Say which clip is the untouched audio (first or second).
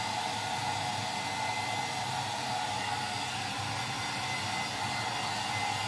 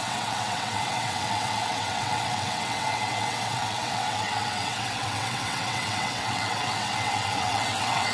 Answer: first